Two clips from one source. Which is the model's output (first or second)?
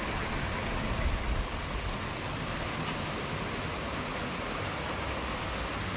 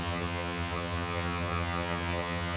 second